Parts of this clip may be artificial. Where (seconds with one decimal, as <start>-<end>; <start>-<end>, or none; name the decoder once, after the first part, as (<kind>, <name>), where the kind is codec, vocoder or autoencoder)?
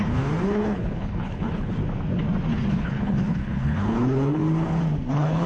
0.0-1.8 (codec, HILCodec); 2.7-4.4; 5.1-5.5